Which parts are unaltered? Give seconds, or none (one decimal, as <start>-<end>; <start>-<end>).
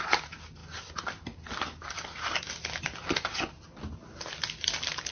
0.0-5.1